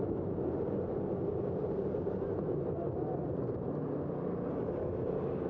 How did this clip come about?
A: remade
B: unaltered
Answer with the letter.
B